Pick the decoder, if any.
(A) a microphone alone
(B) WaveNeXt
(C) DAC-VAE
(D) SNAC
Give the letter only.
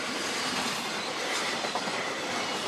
A